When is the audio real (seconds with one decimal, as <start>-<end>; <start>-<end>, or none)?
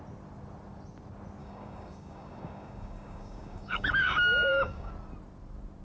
0.0-1.4; 4.9-5.8